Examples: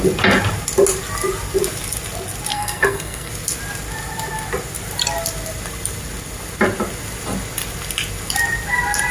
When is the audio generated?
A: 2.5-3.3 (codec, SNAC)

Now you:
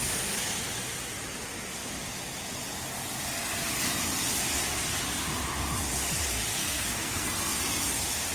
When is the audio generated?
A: 6.6-7.8 (codec, SNAC)